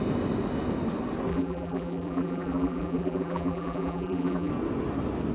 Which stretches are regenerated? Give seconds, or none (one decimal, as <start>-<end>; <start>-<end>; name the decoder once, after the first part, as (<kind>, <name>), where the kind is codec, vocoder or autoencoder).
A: 1.3-4.5 (vocoder, BigVGAN v2)